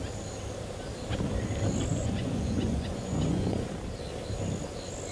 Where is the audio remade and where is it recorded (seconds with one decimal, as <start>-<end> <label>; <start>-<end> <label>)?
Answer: 0.0-1.9 recorded; 1.9-3.7 remade; 3.7-5.1 recorded